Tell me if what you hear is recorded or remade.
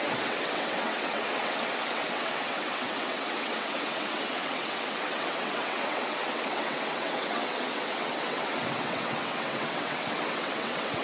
remade